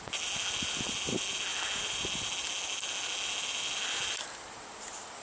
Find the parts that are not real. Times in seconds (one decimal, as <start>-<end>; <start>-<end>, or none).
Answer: none